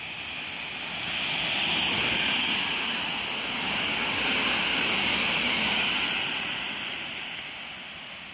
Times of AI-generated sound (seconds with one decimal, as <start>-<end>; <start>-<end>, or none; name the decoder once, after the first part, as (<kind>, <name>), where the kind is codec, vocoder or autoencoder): 6.3-7.1 (vocoder, Vocos)